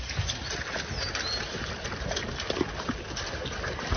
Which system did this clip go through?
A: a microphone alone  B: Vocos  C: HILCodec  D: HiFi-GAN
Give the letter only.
A